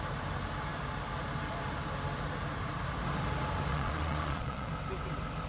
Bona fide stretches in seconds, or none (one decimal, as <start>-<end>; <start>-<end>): 0.0-3.7; 4.7-5.5